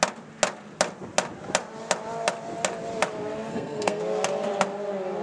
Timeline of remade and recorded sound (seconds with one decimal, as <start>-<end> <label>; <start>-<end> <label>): 0.0-3.5 recorded; 3.5-4.0 remade; 4.0-5.2 recorded